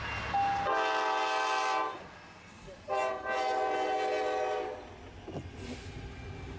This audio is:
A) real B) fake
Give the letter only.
A